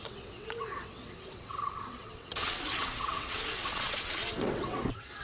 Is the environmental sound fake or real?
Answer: fake